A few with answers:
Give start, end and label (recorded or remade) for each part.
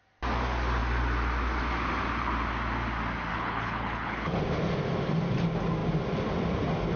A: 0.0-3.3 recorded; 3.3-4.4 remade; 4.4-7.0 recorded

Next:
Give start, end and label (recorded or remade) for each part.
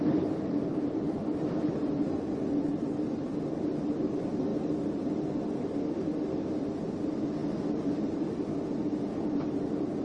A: 0.0-10.0 remade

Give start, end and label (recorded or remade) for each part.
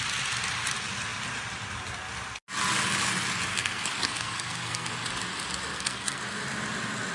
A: 0.0-3.5 recorded; 3.5-4.9 remade; 4.9-5.7 recorded; 5.7-6.2 remade; 6.2-7.1 recorded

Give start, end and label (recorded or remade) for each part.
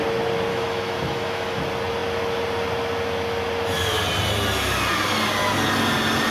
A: 0.0-0.5 recorded; 0.5-1.6 remade; 1.6-6.3 recorded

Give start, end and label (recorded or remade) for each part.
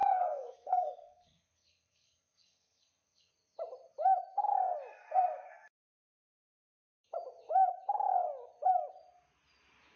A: 0.0-3.3 remade; 3.3-5.1 recorded; 5.1-7.1 remade; 7.1-10.0 recorded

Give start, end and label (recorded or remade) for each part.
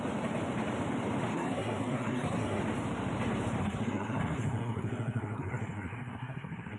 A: 0.0-1.3 recorded; 1.3-2.6 remade; 2.6-3.6 recorded; 3.6-6.8 remade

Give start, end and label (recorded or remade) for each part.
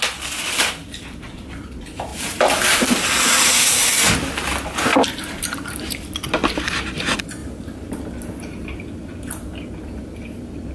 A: 0.0-2.1 recorded; 2.1-4.0 remade; 4.0-4.9 recorded; 4.9-5.9 remade; 5.9-7.4 recorded; 7.4-8.0 remade; 8.0-10.7 recorded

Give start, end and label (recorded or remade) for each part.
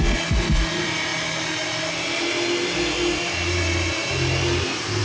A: 0.0-5.0 recorded